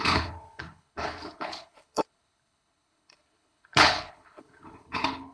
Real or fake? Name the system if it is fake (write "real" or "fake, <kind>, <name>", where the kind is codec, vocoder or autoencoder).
fake, codec, HILCodec